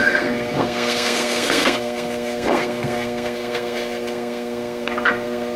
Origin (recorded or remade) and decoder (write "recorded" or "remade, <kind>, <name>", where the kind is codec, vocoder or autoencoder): remade, codec, SNAC